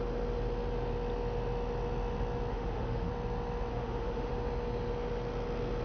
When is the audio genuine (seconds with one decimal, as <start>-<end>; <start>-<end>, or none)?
0.0-2.5; 3.1-3.7; 4.3-5.8